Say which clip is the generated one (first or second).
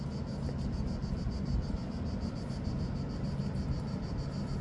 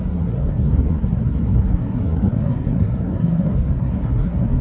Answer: second